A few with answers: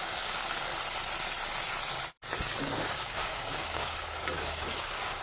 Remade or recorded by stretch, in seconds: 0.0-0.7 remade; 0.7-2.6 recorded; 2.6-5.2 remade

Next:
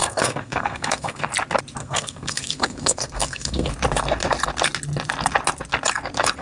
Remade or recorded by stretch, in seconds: 0.0-1.3 remade; 1.3-1.8 recorded; 1.8-3.7 remade; 3.7-6.4 recorded

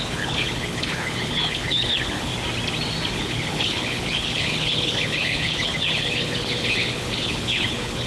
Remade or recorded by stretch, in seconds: 0.0-2.3 remade; 2.3-3.1 recorded; 3.1-8.1 remade

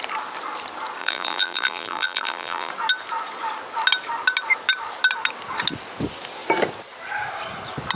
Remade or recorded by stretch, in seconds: 0.0-1.0 recorded; 1.0-2.7 remade; 2.7-8.0 recorded

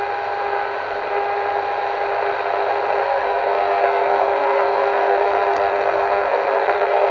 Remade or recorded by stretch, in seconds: 0.0-3.0 recorded; 3.0-7.1 remade

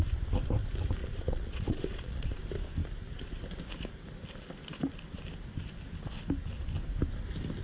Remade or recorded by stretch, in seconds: 0.0-1.0 recorded; 1.0-2.4 remade; 2.4-7.6 recorded